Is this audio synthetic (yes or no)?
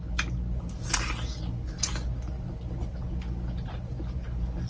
no